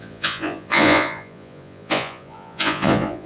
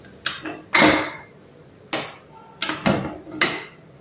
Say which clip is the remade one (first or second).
first